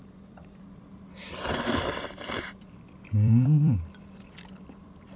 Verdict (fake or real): fake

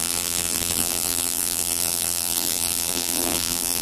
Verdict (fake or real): fake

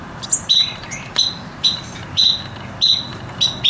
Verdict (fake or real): real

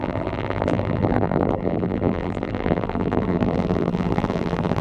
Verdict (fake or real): fake